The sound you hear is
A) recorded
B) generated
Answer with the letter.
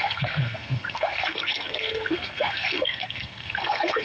B